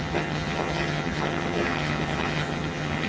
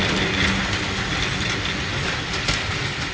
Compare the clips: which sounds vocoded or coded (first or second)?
first